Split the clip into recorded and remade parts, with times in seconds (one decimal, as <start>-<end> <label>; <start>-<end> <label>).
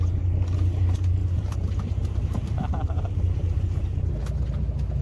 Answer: 0.0-1.2 recorded; 1.2-4.2 remade; 4.2-5.0 recorded